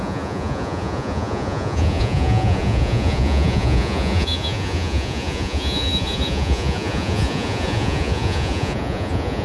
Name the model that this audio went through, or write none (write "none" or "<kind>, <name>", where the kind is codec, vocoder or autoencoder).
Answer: vocoder, Vocos